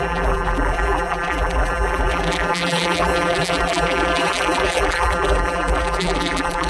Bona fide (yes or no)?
no